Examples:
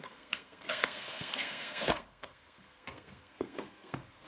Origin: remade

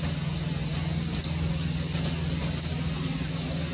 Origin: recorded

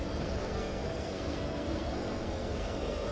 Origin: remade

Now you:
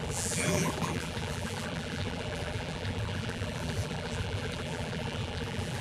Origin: remade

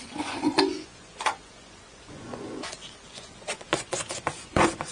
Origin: remade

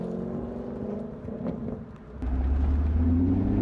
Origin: recorded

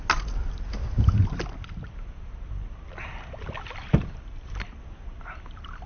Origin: recorded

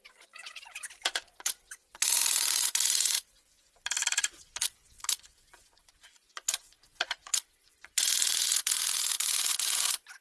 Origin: remade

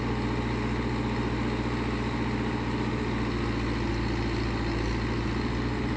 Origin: recorded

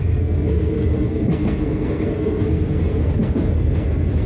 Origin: remade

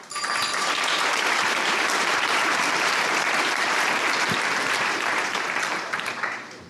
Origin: remade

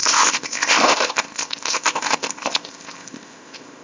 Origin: remade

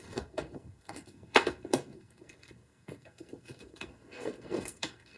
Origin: remade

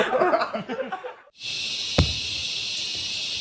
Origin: recorded